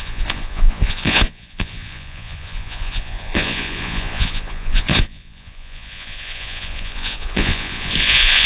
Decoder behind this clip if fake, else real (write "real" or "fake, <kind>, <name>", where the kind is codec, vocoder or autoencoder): fake, vocoder, Vocos